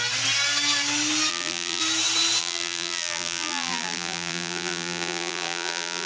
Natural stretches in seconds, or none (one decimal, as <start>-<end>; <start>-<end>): 0.0-1.3; 1.8-2.4